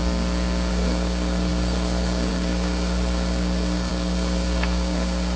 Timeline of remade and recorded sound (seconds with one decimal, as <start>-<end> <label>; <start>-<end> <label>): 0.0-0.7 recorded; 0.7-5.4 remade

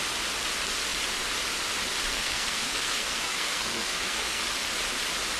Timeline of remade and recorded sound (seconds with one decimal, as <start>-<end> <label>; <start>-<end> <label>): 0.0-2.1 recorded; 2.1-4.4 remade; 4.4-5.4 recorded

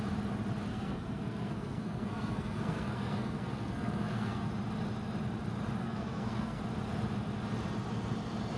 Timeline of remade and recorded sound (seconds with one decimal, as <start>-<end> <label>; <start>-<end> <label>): 0.0-0.7 recorded; 0.7-4.5 remade; 4.5-5.8 recorded; 5.8-6.6 remade; 6.6-8.6 recorded

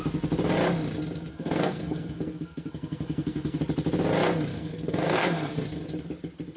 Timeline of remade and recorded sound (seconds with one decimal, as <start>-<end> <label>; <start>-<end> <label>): 0.0-1.3 recorded; 1.3-3.6 remade; 3.6-4.5 recorded; 4.5-5.6 remade; 5.6-6.6 recorded

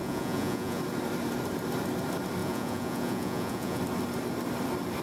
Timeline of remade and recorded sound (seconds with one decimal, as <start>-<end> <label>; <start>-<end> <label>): 0.0-0.8 remade; 0.8-2.4 recorded; 2.4-3.8 remade; 3.8-5.0 recorded